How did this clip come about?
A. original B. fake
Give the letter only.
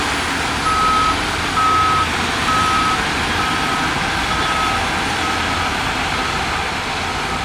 A